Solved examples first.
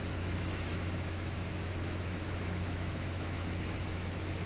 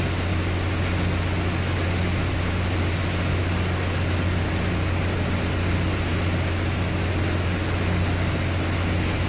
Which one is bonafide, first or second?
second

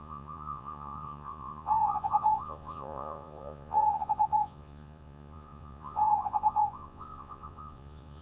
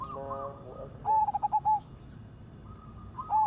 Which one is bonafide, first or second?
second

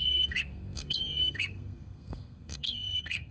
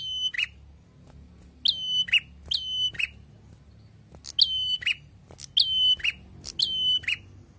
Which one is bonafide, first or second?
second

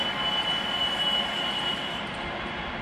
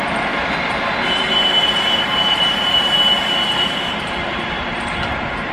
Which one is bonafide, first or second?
first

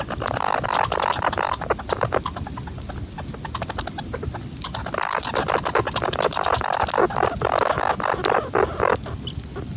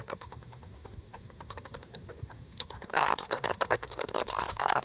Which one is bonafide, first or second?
first